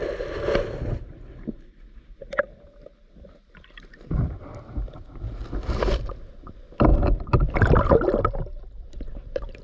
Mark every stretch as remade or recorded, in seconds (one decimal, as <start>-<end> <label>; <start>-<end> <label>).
0.0-9.6 remade